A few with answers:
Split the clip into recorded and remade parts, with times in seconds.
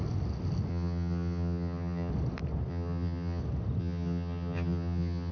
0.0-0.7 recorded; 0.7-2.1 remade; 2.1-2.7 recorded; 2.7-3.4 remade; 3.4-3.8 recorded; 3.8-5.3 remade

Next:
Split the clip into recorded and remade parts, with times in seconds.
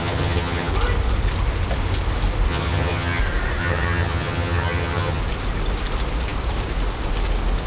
0.0-0.7 remade; 0.7-2.5 recorded; 2.5-3.2 remade; 3.2-3.6 recorded; 3.6-5.2 remade; 5.2-7.7 recorded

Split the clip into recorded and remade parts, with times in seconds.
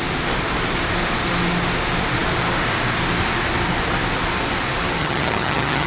0.0-5.0 recorded; 5.0-5.9 remade